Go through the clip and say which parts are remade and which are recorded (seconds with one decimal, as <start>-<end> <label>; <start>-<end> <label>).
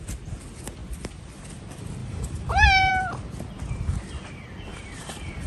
0.0-2.0 recorded; 2.0-2.9 remade; 2.9-4.7 recorded; 4.7-5.5 remade